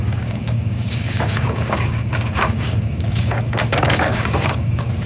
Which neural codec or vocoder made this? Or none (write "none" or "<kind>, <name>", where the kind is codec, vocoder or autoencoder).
codec, DAC